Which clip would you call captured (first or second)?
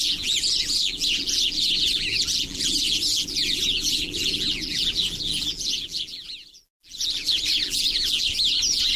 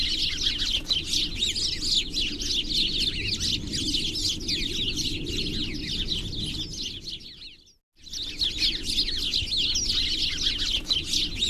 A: second